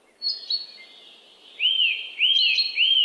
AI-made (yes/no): no